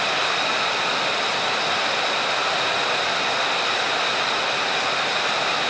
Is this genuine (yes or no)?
yes